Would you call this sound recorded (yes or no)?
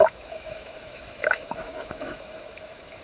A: no